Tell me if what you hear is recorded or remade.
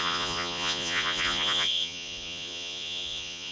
remade